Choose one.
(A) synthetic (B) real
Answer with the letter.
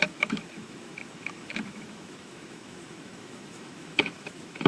A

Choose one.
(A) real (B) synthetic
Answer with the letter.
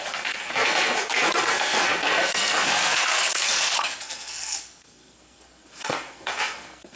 B